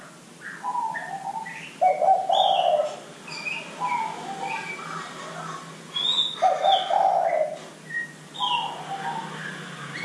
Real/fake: real